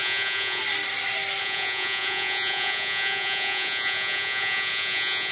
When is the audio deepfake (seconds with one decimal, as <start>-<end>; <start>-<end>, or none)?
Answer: 0.0-0.6; 1.4-5.3